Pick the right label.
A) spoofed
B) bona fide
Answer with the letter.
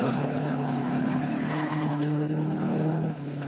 A